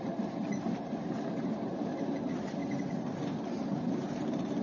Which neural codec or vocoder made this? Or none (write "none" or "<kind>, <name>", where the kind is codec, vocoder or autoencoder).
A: none